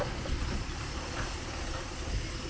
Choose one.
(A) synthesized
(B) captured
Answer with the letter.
B